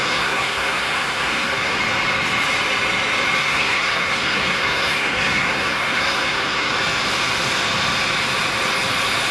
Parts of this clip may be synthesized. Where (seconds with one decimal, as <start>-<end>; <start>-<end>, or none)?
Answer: 0.0-1.8; 3.4-6.7